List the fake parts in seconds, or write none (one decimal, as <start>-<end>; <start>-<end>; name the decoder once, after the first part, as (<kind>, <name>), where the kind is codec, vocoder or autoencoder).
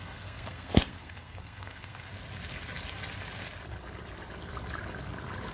0.0-2.1 (codec, SNAC)